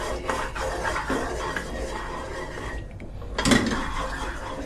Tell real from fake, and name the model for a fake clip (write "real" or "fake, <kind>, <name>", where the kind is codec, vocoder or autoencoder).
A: real